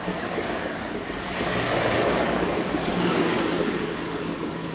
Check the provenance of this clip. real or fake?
fake